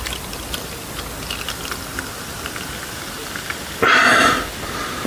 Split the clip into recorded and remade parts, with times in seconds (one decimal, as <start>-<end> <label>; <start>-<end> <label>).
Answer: 0.0-5.1 recorded